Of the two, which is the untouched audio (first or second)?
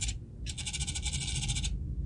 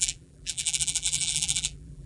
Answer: first